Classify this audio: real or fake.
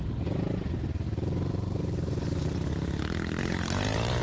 real